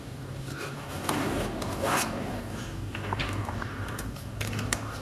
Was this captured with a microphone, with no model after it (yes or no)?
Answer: no